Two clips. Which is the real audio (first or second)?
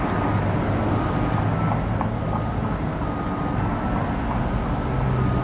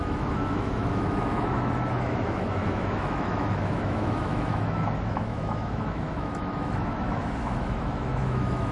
first